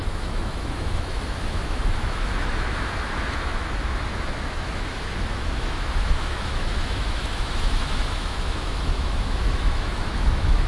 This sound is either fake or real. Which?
fake